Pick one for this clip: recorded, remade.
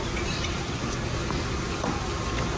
recorded